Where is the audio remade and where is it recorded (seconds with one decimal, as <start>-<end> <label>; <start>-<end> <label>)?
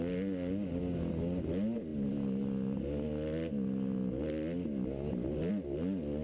0.0-6.2 recorded